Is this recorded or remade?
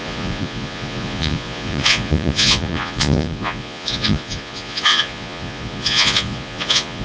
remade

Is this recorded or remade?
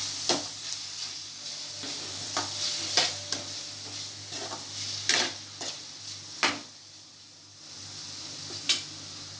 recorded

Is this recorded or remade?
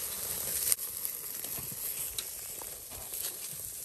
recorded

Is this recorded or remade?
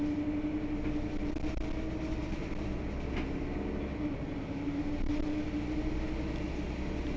recorded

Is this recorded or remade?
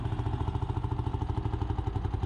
recorded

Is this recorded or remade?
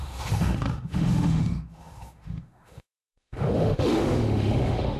remade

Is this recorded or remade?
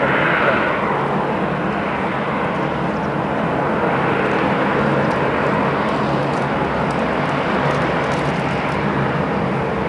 recorded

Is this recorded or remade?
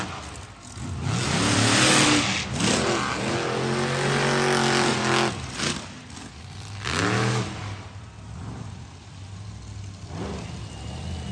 recorded